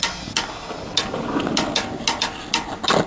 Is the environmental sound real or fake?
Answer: real